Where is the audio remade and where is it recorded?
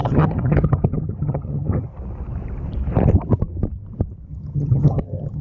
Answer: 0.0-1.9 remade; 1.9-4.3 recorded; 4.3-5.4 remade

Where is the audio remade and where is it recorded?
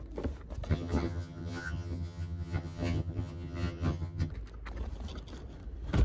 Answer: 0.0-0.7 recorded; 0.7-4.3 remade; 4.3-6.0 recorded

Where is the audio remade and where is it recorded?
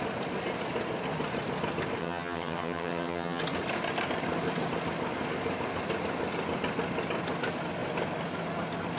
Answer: 0.0-2.0 recorded; 2.0-3.4 remade; 3.4-9.0 recorded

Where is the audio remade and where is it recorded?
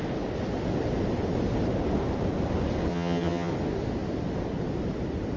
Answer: 0.0-2.9 recorded; 2.9-3.5 remade; 3.5-5.4 recorded